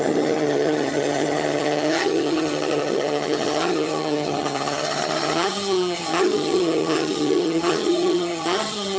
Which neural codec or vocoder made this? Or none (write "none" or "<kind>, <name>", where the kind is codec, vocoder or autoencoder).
vocoder, HiFi-GAN